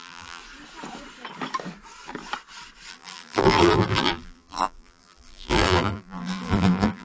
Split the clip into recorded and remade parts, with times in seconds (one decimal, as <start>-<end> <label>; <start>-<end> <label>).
0.0-0.4 remade; 0.4-2.9 recorded; 2.9-7.0 remade